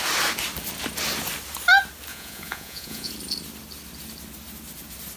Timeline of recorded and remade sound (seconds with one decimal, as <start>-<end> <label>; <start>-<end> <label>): 0.0-2.1 recorded; 2.1-3.1 remade; 3.1-5.2 recorded